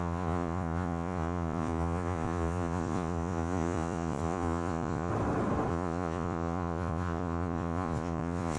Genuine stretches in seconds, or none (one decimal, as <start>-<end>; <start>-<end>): 5.1-5.7